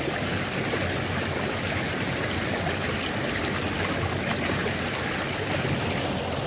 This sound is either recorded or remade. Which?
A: recorded